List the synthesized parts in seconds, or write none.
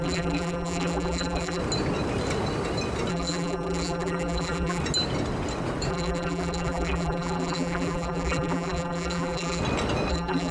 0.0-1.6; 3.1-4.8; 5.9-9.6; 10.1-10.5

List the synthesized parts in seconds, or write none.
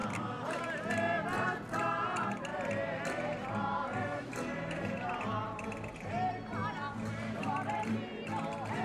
0.0-0.6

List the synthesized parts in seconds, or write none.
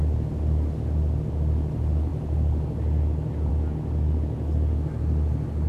none